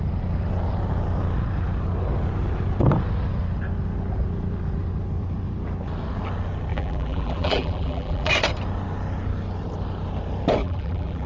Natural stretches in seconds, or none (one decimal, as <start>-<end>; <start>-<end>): 0.0-6.7; 8.3-10.6